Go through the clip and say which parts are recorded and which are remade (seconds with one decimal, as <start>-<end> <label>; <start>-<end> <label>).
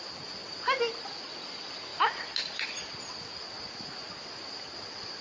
0.0-5.2 recorded